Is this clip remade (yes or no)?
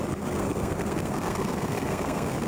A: yes